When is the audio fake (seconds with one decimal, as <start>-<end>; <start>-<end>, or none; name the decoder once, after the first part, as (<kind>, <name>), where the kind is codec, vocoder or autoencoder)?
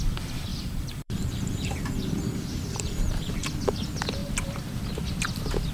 0.5-3.3 (vocoder, BigVGAN v2)